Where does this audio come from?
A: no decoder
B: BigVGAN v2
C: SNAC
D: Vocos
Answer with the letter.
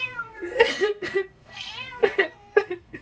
C